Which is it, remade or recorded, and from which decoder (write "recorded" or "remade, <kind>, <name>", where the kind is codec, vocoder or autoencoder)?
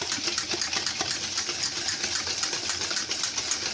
recorded